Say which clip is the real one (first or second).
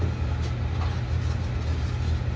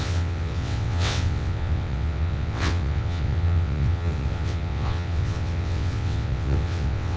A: first